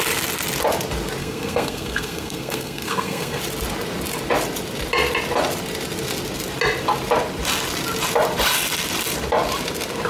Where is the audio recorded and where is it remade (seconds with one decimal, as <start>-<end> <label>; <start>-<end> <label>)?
0.0-1.2 recorded; 1.2-3.4 remade; 3.4-10.1 recorded